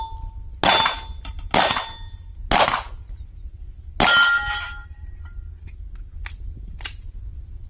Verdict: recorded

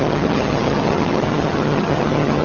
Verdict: remade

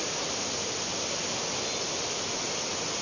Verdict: recorded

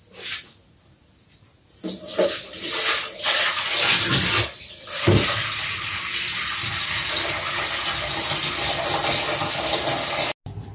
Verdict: recorded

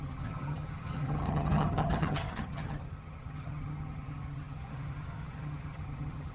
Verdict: remade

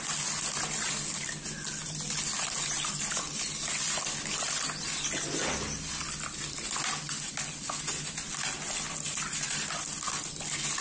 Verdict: recorded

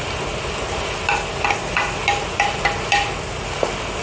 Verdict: recorded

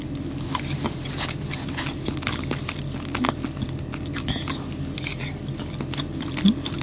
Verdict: recorded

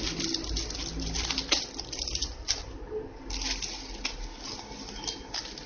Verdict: recorded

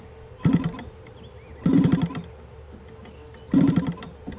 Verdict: recorded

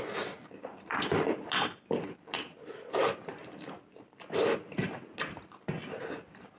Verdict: recorded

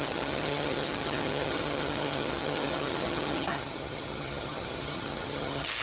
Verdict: remade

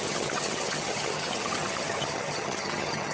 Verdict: remade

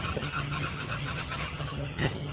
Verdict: remade